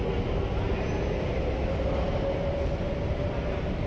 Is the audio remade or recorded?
recorded